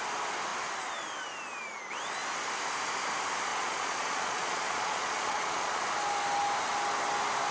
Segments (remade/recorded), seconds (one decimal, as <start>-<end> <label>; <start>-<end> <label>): 0.0-3.5 recorded; 3.5-5.8 remade; 5.8-7.5 recorded